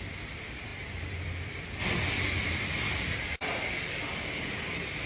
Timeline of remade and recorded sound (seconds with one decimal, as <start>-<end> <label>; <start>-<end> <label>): 0.0-5.1 remade